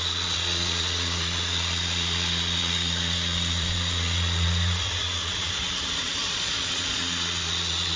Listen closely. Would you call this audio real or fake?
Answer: fake